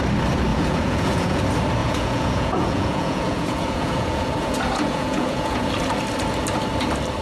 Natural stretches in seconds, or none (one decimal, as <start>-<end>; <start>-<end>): 0.0-0.5; 1.4-1.8; 5.7-7.2